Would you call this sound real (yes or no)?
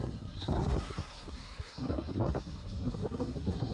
no